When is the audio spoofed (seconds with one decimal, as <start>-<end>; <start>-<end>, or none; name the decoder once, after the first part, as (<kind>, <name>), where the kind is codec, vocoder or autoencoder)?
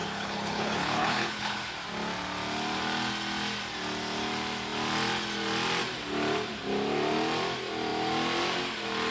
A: 0.0-1.7 (codec, HILCodec)